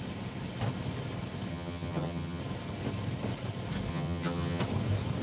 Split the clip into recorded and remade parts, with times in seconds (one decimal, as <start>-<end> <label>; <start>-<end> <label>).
0.0-1.5 recorded; 1.5-2.4 remade; 2.4-3.9 recorded; 3.9-4.6 remade; 4.6-5.2 recorded